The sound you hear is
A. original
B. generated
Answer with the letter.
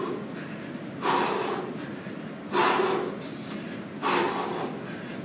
A